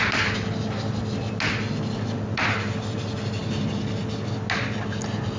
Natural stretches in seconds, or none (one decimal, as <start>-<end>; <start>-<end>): 0.0-5.4